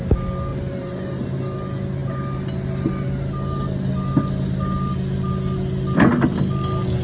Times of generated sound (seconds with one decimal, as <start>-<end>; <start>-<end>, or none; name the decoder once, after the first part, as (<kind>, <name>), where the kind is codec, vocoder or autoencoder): 0.5-1.2 (vocoder, BigVGAN v2)